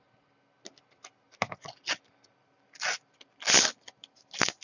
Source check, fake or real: real